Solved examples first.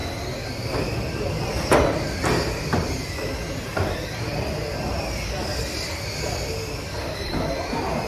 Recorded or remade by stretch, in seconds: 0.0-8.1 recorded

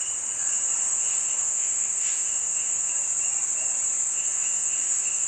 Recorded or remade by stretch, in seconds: 0.0-0.8 recorded; 0.8-2.9 remade; 2.9-4.1 recorded; 4.1-5.3 remade

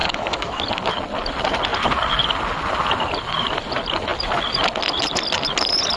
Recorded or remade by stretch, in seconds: 0.0-0.6 remade; 0.6-6.0 recorded

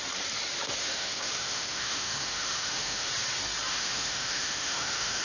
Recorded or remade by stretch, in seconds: 0.0-0.8 recorded; 0.8-3.1 remade; 3.1-3.7 recorded; 3.7-5.2 remade